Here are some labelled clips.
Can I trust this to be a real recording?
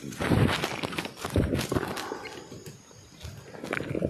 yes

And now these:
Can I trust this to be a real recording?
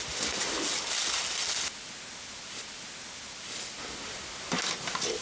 yes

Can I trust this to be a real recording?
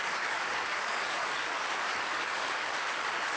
no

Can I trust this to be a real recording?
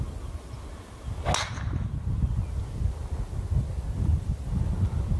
yes